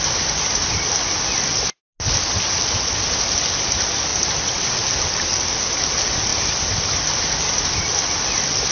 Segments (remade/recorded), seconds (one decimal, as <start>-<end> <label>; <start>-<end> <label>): 0.0-8.7 recorded